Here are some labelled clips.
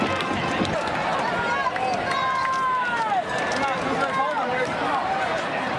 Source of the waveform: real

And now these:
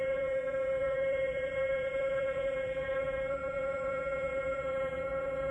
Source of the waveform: fake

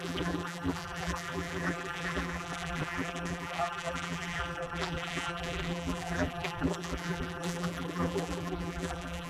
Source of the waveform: fake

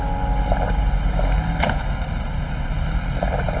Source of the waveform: real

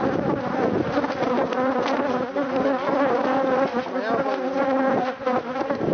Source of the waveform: real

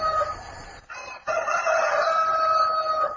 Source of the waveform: real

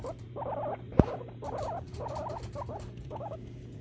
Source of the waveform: fake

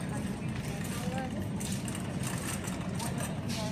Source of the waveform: real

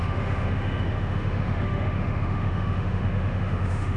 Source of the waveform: fake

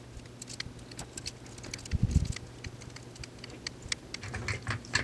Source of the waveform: real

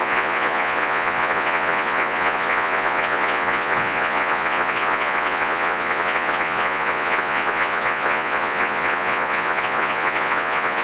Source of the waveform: fake